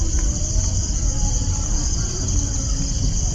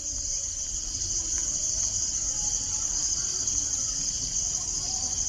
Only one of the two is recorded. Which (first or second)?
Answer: first